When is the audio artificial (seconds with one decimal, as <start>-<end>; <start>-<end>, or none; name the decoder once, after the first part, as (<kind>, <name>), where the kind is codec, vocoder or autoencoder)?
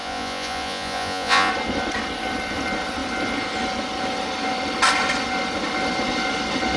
0.0-1.5 (vocoder, Vocos)